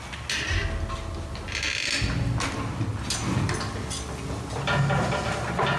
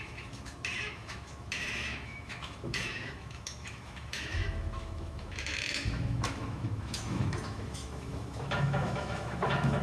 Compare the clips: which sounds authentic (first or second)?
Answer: first